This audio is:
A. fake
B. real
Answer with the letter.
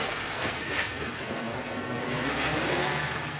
A